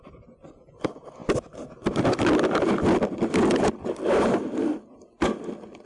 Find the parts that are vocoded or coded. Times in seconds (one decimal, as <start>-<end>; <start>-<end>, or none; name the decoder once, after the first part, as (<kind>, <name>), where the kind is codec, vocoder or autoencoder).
none

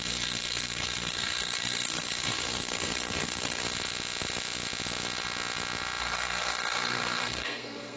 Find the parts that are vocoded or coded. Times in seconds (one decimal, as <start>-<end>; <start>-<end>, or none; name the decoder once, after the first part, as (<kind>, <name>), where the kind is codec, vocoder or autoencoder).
0.0-3.6 (codec, SNAC); 6.0-8.0

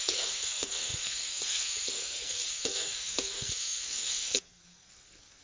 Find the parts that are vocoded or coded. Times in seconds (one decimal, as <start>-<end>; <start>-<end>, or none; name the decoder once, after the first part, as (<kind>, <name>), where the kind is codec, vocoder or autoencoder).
0.0-5.4 (codec, SNAC)

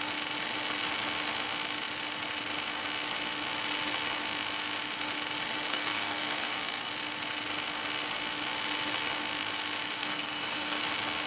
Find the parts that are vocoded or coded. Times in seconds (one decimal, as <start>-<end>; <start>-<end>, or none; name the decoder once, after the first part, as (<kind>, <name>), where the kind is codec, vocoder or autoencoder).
5.7-6.9 (codec, SNAC); 10.0-10.8

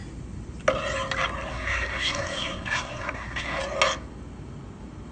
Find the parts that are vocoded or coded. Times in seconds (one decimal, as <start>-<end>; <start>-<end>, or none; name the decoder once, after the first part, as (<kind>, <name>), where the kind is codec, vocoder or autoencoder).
1.5-3.6 (codec, SNAC)

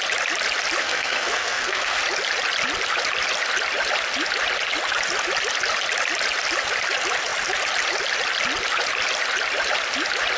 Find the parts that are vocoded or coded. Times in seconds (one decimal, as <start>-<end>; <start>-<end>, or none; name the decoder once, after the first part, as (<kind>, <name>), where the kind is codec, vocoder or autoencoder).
0.8-2.0 (codec, SNAC)

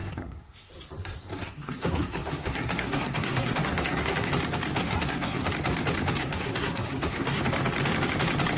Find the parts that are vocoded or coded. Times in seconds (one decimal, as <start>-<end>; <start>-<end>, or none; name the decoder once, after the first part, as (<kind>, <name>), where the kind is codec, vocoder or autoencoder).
0.0-0.7 (codec, SNAC); 1.3-4.3; 4.8-5.5; 6.2-7.4